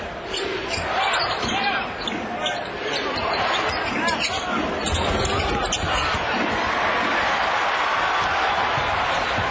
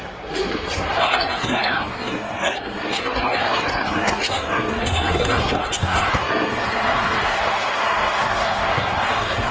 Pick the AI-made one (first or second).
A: second